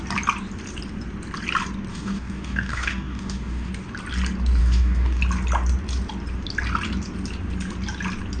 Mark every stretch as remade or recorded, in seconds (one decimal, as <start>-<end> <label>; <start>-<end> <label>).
0.0-1.9 recorded; 1.9-3.7 remade; 3.7-4.6 recorded; 4.6-5.2 remade; 5.2-8.4 recorded